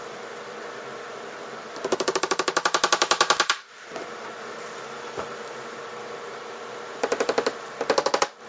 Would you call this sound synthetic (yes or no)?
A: yes